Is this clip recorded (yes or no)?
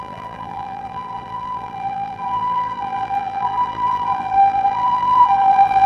no